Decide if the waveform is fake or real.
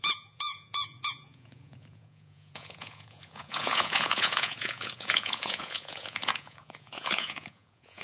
fake